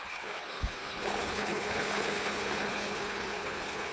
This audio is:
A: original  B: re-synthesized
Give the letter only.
B